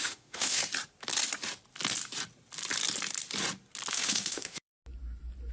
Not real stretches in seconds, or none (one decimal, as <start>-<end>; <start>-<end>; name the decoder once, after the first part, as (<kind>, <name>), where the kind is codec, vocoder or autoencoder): 0.0-0.6 (autoencoder, DAC-VAE); 3.9-4.8